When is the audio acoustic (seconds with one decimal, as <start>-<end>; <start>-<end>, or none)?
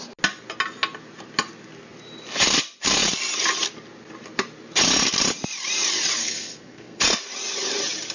0.0-6.2; 7.0-8.1